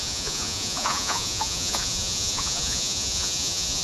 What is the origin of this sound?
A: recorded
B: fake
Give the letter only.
B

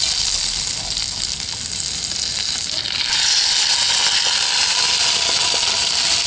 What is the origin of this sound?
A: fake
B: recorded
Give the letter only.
B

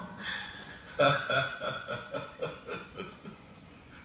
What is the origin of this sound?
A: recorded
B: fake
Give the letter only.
B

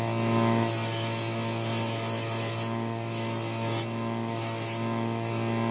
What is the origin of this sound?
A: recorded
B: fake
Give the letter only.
A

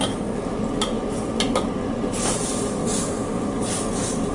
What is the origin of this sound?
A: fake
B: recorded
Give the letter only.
B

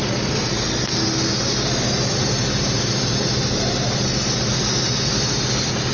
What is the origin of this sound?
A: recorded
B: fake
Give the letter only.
A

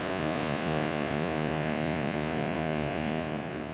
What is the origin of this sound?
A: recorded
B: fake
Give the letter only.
B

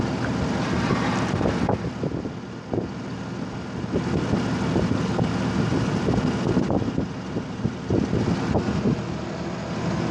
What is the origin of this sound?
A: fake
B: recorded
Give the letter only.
B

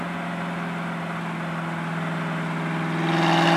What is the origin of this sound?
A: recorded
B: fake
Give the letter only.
A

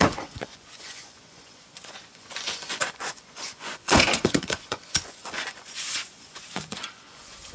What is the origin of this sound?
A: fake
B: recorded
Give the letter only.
A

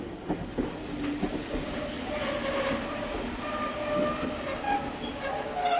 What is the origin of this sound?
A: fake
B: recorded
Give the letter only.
B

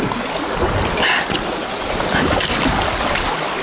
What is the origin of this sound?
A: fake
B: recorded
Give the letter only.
B